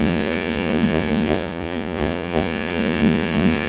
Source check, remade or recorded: remade